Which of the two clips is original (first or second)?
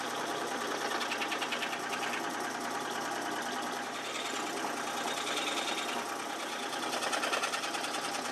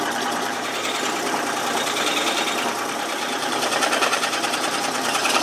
first